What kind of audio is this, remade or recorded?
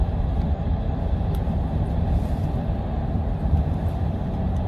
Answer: recorded